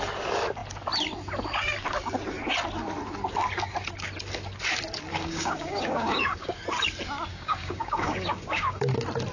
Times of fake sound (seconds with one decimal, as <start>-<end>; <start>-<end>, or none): 5.1-6.6; 7.3-8.8